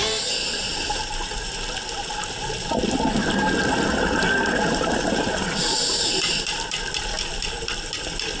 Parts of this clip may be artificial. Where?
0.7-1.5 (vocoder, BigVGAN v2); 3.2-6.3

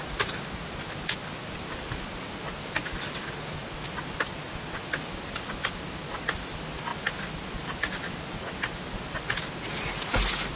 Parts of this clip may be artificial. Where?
none

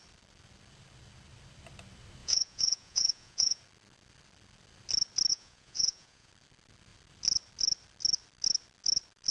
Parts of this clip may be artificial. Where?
2.2-3.6 (vocoder, Vocos); 5.3-6.3

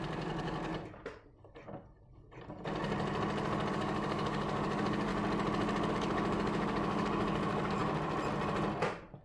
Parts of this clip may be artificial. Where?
0.0-0.7 (codec, DAC); 3.7-5.1; 5.9-7.8

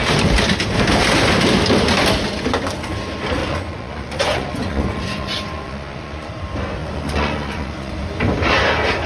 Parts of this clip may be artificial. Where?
3.4-6.3 (vocoder, Vocos); 6.8-7.9

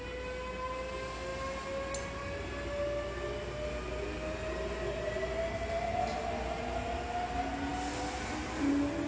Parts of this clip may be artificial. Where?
none

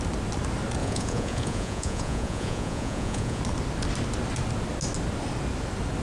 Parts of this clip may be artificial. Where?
0.8-3.4 (vocoder, Vocos)

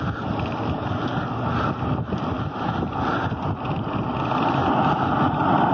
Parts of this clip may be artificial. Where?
none